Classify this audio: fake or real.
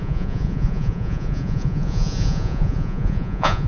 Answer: fake